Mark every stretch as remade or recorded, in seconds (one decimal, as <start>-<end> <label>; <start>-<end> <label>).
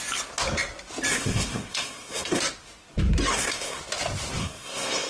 0.0-1.1 recorded; 1.1-2.4 remade; 2.4-3.3 recorded; 3.3-3.8 remade; 3.8-4.4 recorded; 4.4-5.1 remade